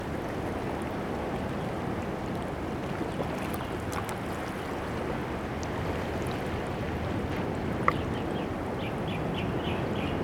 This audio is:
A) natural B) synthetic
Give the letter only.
A